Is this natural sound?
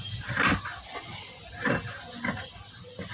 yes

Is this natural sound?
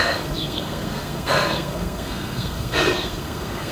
no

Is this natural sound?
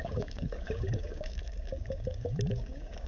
no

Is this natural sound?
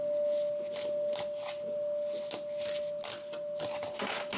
yes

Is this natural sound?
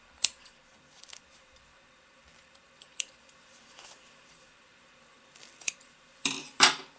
no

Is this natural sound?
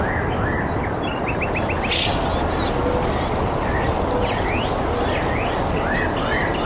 yes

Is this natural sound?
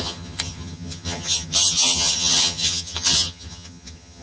no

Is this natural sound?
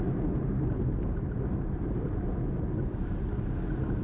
yes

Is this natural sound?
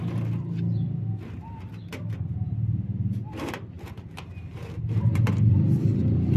yes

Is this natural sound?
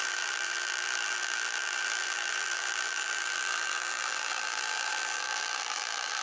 no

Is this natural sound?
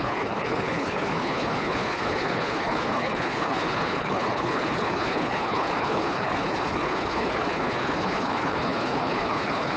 no